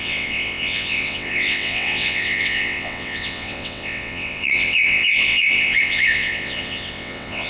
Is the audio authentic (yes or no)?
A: no